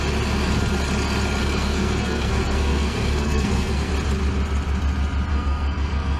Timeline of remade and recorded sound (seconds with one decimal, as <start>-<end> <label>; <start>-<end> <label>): 0.0-1.4 recorded; 1.4-3.9 remade; 3.9-5.3 recorded; 5.3-6.2 remade